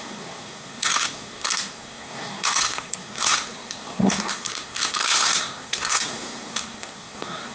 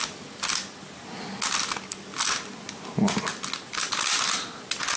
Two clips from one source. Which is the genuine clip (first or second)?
second